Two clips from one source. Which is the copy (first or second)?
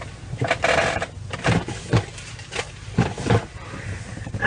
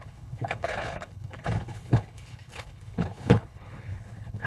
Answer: second